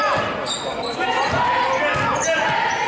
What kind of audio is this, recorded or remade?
recorded